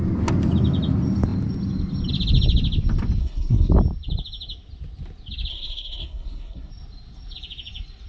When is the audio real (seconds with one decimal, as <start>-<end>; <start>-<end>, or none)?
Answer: 0.0-3.2; 3.7-5.5; 6.7-8.1